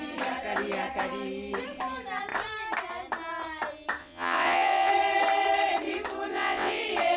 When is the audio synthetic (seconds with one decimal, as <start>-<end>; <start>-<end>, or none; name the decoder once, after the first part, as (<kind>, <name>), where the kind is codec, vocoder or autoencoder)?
4.0-4.9 (vocoder, WaveNeXt); 6.3-6.8